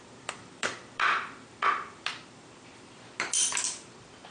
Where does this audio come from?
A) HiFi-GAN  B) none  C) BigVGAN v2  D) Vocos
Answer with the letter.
C